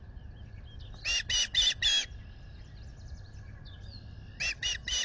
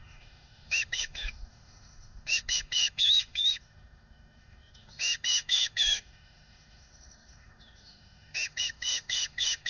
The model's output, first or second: second